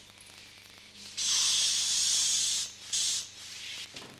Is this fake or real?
real